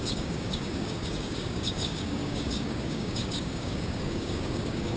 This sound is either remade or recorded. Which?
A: remade